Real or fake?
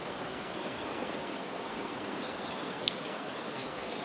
fake